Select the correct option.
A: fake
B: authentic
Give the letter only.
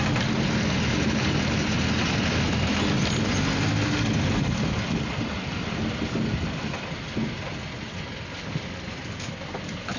B